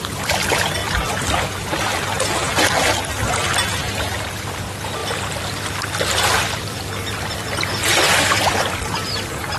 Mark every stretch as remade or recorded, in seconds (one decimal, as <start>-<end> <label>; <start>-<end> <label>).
0.0-0.8 remade; 0.8-1.7 recorded; 1.7-9.6 remade